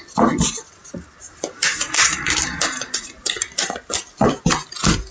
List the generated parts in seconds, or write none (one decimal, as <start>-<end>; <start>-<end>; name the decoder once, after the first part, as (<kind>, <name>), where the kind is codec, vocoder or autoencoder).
0.8-3.9 (vocoder, BigVGAN v2)